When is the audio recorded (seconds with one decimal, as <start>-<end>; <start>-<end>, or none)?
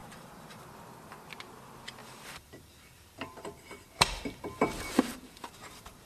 0.6-2.0